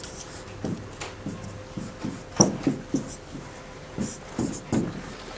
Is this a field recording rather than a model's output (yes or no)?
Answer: yes